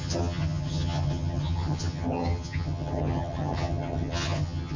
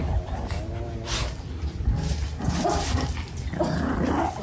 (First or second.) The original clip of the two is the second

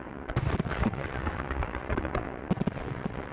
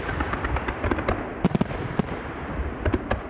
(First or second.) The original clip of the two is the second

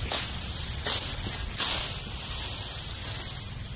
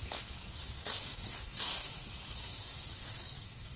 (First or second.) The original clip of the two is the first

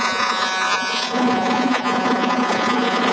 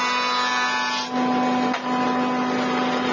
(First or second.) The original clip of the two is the second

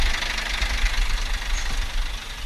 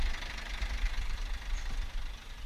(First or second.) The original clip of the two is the first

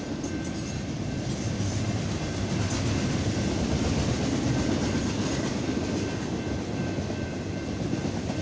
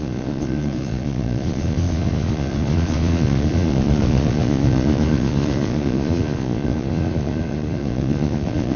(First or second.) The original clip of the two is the first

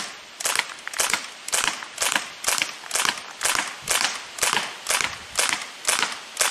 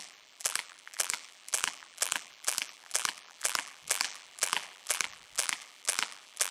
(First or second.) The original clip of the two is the first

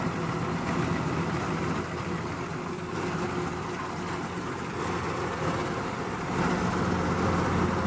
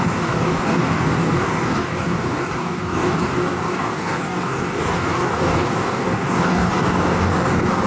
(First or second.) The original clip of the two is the first